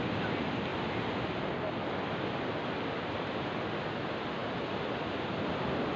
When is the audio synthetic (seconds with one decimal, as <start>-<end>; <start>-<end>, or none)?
none